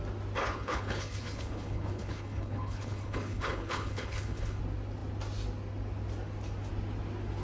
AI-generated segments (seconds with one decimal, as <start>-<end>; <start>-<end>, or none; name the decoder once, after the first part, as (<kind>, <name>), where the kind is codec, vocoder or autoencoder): 0.4-4.6 (codec, HILCodec)